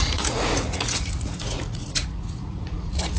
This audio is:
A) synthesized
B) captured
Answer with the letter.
A